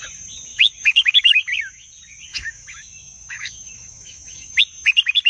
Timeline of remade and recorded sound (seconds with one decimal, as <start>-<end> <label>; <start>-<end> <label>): 0.0-0.5 recorded; 0.5-1.4 remade; 1.4-2.3 recorded; 2.3-4.6 remade; 4.6-5.3 recorded